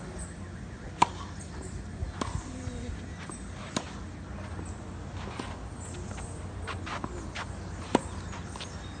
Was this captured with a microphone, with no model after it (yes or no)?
yes